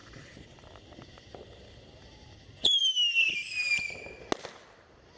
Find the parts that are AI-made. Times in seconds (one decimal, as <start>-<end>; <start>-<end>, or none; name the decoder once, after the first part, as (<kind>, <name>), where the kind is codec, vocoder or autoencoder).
0.0-3.1 (vocoder, BigVGAN v2)